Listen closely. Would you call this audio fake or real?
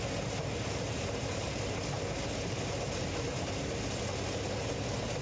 real